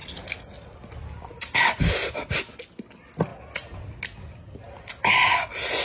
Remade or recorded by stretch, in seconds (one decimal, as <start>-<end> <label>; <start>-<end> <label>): 0.0-5.8 recorded